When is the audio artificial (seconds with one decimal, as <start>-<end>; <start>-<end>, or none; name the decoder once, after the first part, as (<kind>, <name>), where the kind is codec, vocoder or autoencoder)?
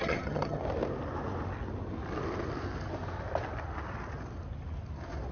0.0-0.6 (vocoder, HiFi-GAN)